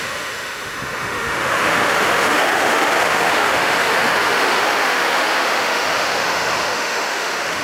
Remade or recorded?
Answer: remade